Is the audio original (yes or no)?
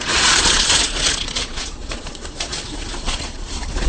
no